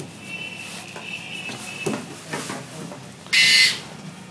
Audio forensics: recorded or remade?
recorded